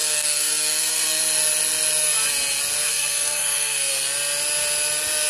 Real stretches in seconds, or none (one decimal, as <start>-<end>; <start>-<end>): 1.2-2.9; 3.9-5.3